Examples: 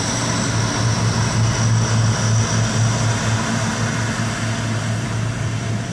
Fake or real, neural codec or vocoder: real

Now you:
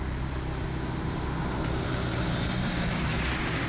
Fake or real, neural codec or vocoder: real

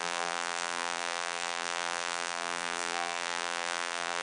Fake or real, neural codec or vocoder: fake, vocoder, BigVGAN v2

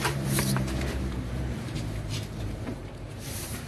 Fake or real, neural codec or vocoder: fake, vocoder, BigVGAN v2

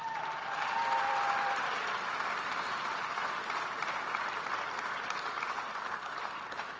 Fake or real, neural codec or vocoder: fake, vocoder, BigVGAN v2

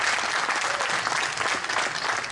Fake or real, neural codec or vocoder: real